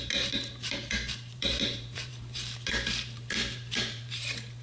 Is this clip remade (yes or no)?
yes